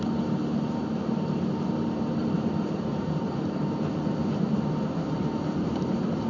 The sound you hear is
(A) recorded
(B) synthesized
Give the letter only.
B